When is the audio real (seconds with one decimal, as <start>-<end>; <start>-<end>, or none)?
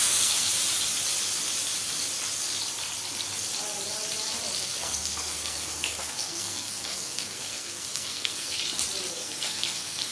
0.5-4.6; 8.6-9.1